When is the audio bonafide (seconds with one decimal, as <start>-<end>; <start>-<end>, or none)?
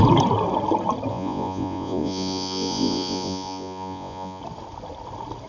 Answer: 0.0-1.1; 4.4-5.5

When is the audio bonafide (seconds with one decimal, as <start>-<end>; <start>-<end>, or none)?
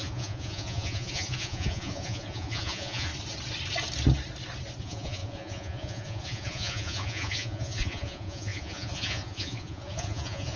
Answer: 3.1-4.8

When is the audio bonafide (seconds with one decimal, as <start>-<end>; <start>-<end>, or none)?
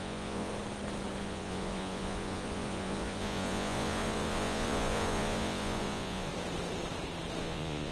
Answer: 0.5-1.2; 6.3-7.4